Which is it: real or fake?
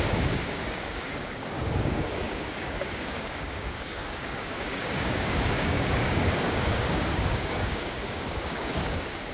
fake